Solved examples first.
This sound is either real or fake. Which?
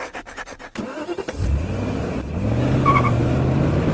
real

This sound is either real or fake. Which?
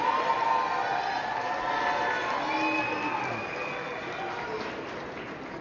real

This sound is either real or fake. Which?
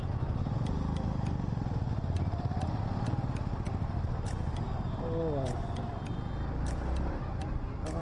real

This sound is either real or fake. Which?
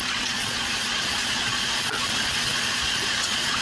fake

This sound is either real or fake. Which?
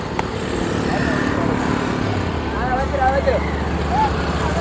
real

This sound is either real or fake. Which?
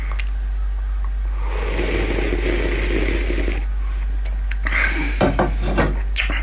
real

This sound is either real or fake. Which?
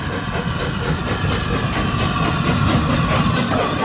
real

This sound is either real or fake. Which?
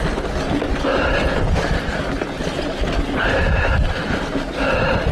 real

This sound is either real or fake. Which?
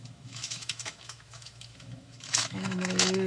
fake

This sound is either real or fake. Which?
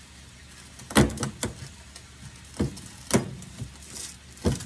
real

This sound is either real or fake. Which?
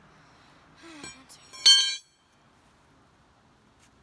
real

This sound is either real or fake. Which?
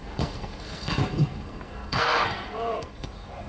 fake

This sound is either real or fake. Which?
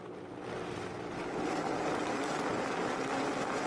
real